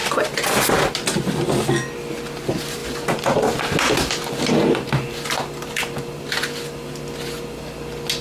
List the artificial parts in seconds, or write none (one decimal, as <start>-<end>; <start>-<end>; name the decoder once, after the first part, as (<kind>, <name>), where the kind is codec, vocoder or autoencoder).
none